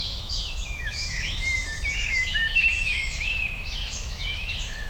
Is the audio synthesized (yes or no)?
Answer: yes